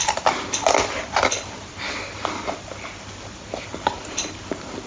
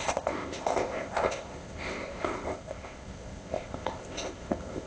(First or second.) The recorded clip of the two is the first